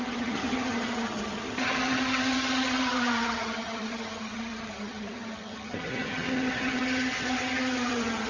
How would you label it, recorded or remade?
remade